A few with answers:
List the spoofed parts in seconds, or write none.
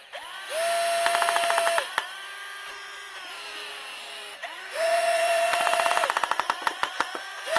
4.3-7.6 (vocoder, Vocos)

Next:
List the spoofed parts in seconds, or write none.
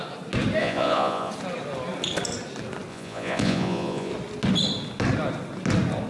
0.6-1.3 (vocoder, Vocos); 2.9-4.1